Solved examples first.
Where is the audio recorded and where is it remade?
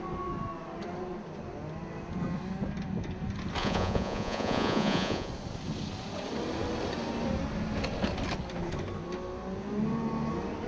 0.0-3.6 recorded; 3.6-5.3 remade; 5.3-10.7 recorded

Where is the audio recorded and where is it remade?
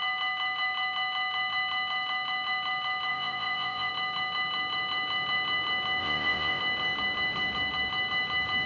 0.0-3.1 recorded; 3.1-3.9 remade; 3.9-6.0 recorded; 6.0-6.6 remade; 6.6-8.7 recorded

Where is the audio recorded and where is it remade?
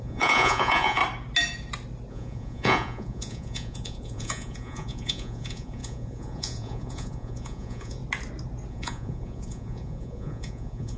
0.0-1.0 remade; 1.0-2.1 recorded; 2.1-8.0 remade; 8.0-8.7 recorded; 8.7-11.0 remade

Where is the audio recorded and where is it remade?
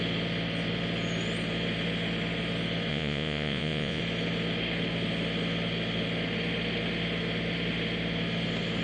0.0-2.9 recorded; 2.9-4.0 remade; 4.0-8.8 recorded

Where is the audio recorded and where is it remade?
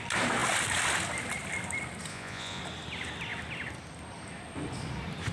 0.0-2.1 recorded; 2.1-2.6 remade; 2.6-5.3 recorded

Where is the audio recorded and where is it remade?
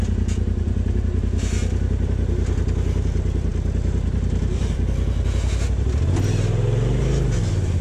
0.0-7.8 recorded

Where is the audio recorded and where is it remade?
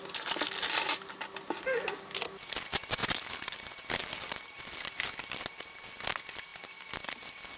0.0-7.6 recorded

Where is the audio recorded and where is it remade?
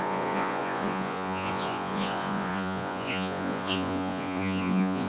0.0-5.1 remade